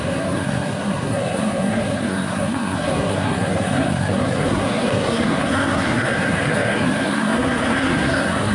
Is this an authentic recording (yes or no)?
no